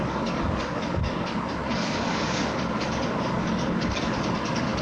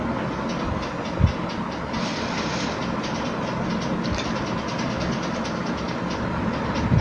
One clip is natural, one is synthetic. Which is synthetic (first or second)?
first